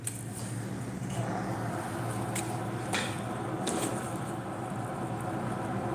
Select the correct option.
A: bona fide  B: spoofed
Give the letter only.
A